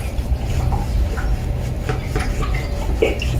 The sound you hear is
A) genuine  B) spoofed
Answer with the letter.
A